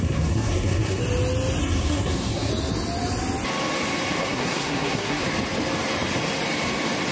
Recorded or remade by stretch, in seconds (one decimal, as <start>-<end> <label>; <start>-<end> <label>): 0.0-1.0 remade; 1.0-1.6 recorded; 1.6-2.5 remade; 2.5-4.2 recorded; 4.2-5.2 remade; 5.2-7.1 recorded